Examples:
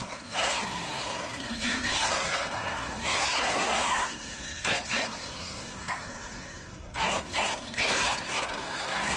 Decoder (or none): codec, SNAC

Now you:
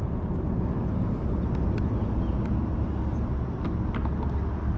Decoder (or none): none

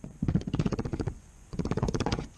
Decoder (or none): vocoder, Vocos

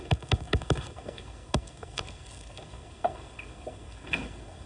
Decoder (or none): codec, SNAC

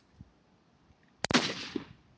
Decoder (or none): none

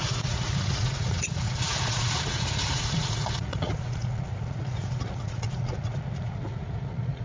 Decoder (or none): vocoder, Vocos